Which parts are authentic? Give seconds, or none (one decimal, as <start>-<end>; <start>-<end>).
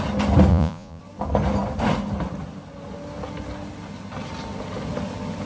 0.0-0.5; 1.0-5.5